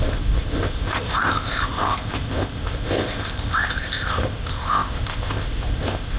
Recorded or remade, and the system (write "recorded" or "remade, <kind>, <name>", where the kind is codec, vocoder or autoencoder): remade, codec, ZipCodec